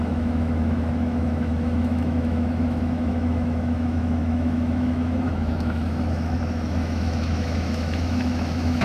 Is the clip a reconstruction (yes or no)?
yes